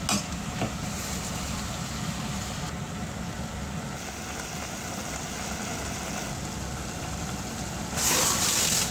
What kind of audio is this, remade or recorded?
recorded